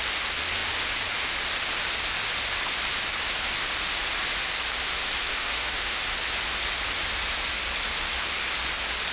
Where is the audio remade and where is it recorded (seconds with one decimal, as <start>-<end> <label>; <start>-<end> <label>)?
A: 0.0-5.3 recorded; 5.3-6.0 remade; 6.0-9.1 recorded